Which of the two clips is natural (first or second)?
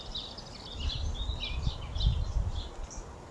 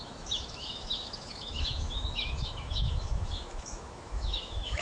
first